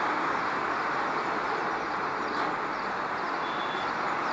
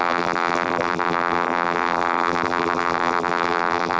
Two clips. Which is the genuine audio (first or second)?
first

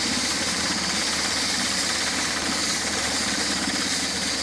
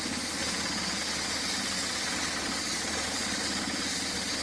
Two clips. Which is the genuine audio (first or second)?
second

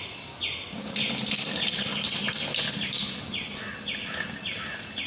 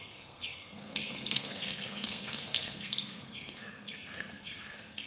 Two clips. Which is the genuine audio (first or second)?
first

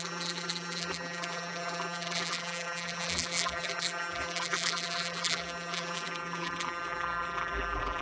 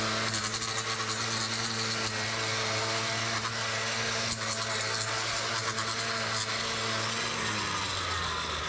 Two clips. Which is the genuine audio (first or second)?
second